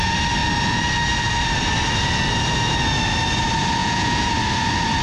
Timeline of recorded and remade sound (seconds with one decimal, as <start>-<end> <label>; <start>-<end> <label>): 0.0-3.8 recorded; 3.8-4.3 remade; 4.3-5.0 recorded